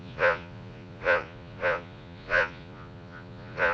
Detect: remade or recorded remade